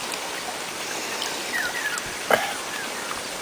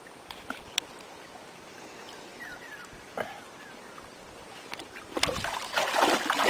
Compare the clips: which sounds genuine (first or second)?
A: second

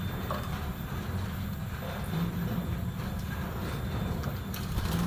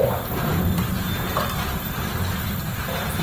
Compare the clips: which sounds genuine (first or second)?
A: first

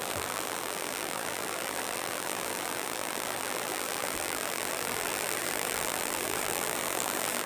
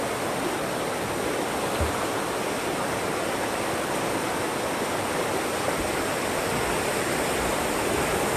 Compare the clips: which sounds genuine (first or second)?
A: second